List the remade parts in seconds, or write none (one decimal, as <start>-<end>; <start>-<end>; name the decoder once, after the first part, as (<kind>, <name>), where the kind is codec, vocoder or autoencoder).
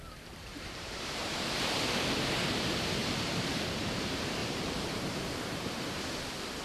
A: 0.5-1.4 (vocoder, BigVGAN v2); 3.0-3.6; 4.4-6.0